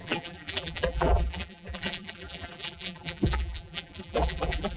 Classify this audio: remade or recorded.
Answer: remade